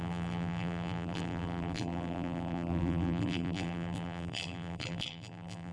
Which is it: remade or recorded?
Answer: remade